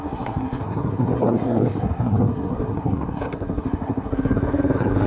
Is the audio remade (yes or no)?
yes